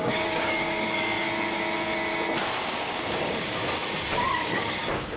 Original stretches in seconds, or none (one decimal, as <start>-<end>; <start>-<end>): 1.2-2.7; 3.6-4.3